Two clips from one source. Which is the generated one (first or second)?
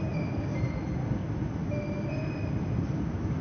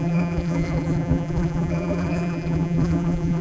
second